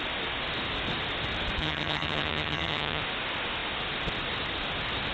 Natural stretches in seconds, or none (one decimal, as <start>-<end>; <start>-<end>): 0.0-1.6; 3.0-5.1